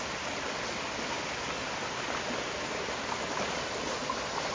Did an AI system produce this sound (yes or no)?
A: no